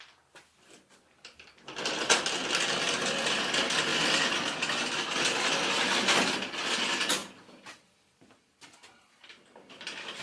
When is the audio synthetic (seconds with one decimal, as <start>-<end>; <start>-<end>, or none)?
7.2-10.2